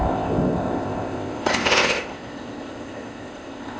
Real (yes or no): no